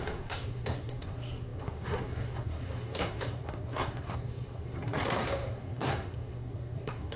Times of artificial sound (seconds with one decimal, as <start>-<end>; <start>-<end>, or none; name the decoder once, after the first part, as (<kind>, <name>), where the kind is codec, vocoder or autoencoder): 0.0-7.2 (codec, SNAC)